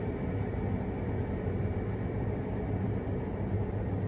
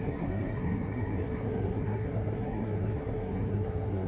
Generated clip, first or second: second